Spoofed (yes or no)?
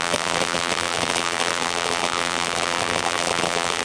yes